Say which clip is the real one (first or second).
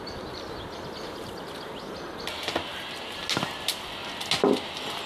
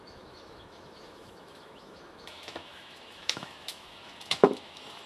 first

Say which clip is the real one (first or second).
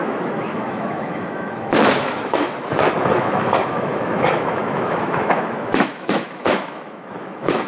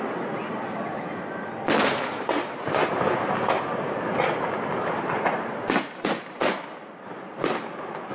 second